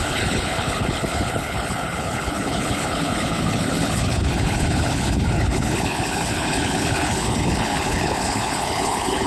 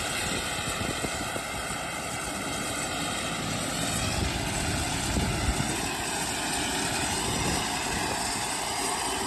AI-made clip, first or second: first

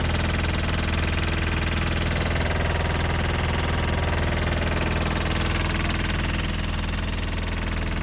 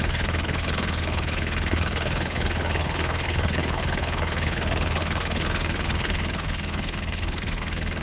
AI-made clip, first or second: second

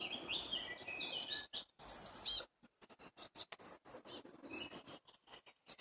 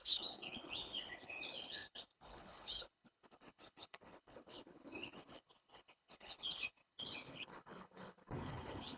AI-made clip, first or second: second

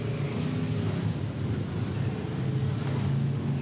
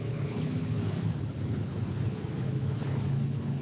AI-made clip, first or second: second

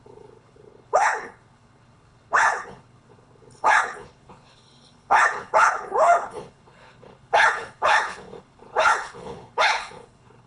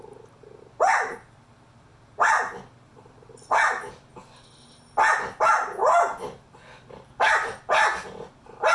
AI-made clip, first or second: first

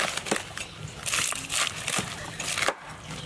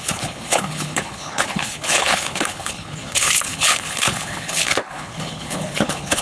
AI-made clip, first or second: second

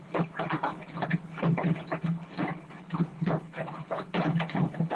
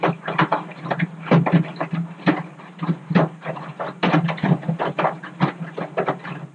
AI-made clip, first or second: first